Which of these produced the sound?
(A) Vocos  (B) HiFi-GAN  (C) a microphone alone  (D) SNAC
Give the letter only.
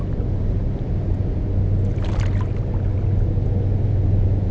C